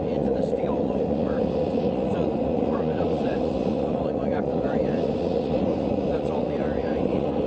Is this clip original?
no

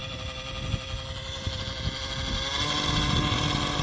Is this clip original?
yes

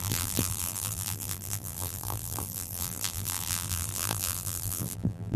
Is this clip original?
no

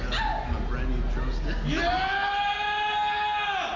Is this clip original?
yes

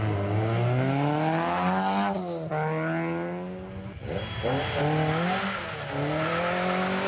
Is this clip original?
yes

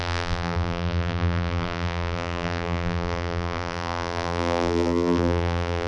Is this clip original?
no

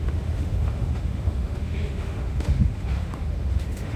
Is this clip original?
no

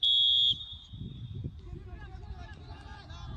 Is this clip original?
yes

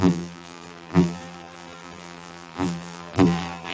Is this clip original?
no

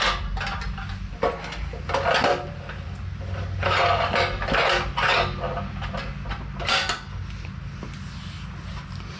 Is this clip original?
yes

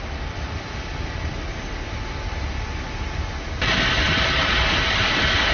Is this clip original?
yes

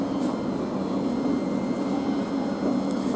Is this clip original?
yes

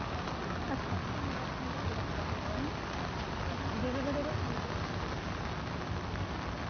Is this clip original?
yes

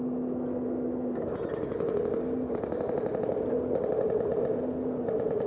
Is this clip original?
yes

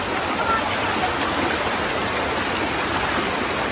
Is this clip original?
yes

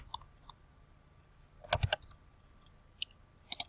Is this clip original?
yes